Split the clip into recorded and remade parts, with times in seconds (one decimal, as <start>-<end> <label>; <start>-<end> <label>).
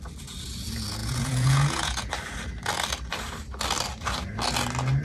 0.0-1.0 recorded; 1.0-2.1 remade; 2.1-5.0 recorded